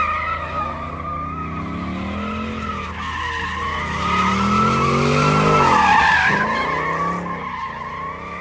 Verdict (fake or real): real